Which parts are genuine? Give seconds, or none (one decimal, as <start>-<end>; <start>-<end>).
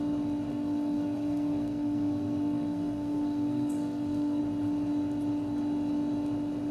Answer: 0.0-0.5; 4.4-6.7